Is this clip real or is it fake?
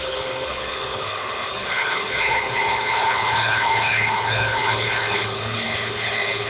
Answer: fake